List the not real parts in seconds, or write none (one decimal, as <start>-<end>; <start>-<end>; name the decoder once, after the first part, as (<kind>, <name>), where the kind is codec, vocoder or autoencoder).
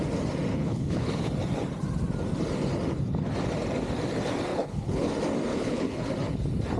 0.5-1.3 (codec, HILCodec); 4.5-5.1; 5.5-6.1